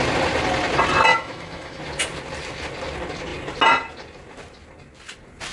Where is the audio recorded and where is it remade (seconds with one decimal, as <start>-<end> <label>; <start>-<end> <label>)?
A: 0.0-1.1 recorded; 1.1-1.8 remade; 1.8-5.5 recorded